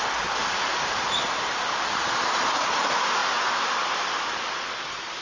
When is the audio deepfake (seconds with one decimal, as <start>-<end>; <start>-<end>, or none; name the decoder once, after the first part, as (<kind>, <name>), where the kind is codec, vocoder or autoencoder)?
none